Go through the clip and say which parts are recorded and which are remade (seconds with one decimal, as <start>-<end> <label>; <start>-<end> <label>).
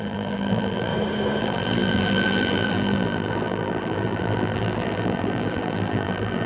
0.0-0.9 remade; 0.9-1.4 recorded; 1.4-6.5 remade